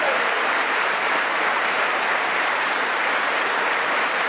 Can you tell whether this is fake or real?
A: fake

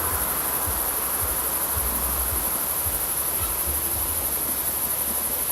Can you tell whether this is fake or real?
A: real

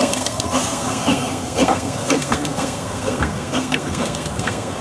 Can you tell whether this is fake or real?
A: fake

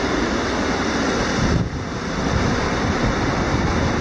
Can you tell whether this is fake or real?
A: real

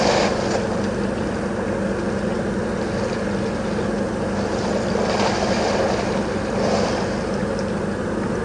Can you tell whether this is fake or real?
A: real